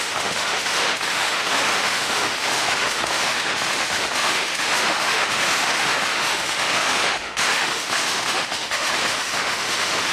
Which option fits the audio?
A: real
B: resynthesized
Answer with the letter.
B